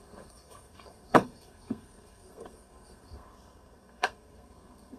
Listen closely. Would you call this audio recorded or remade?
remade